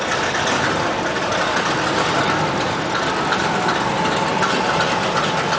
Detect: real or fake real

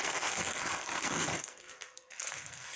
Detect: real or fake fake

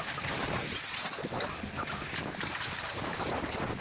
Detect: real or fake real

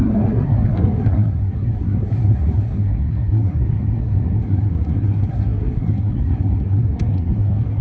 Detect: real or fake fake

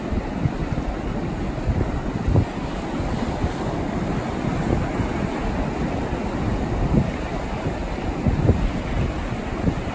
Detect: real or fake real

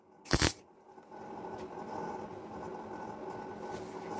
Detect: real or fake real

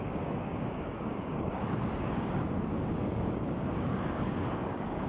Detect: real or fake fake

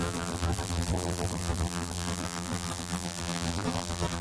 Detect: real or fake fake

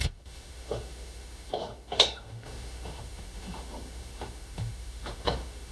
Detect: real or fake fake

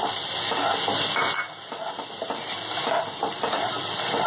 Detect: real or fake real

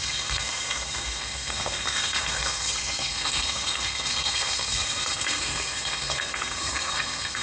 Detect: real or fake fake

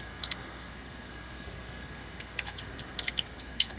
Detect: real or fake fake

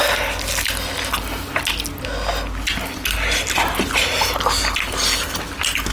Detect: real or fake real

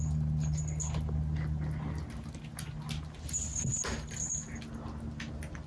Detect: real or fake real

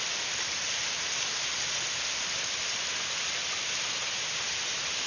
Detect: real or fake real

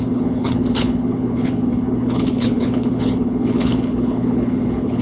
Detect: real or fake fake